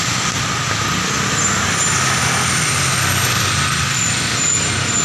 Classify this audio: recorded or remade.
recorded